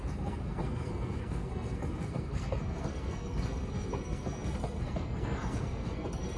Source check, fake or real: fake